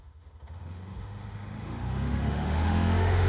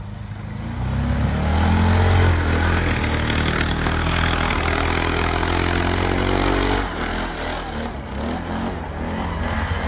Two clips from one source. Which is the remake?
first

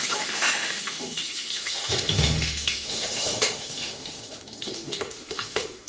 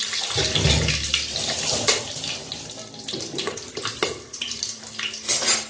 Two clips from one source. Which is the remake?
first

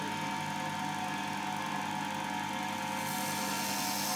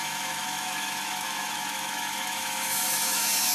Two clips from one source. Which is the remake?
second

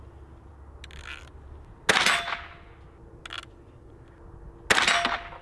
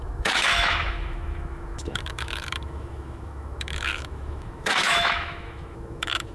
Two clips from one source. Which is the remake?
second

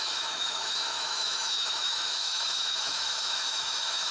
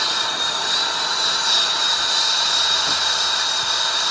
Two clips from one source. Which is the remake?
first